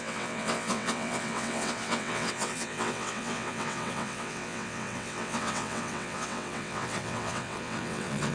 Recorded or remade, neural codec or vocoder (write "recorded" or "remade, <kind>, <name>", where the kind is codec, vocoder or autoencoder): remade, vocoder, WaveNeXt